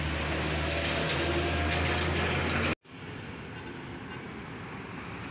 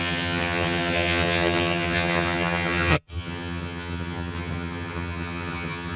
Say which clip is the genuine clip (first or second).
first